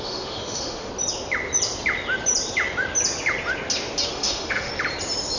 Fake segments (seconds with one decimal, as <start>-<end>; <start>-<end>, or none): 0.0-0.9; 4.1-4.7